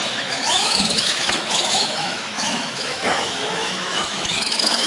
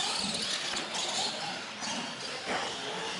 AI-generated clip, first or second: first